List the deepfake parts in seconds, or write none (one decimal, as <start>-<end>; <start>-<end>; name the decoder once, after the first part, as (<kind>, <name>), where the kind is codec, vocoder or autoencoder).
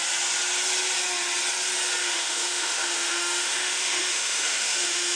2.0-5.2 (autoencoder, DAC-VAE)